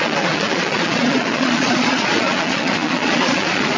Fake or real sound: fake